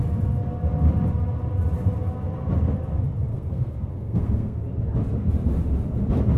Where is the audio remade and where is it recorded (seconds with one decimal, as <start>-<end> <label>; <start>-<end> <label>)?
0.0-3.3 recorded; 3.3-4.6 remade; 4.6-6.4 recorded